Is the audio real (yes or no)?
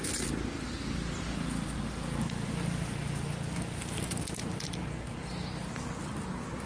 yes